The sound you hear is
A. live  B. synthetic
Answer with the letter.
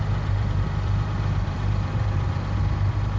B